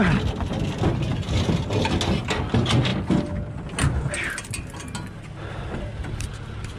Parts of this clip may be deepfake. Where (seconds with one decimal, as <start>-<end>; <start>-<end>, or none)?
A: none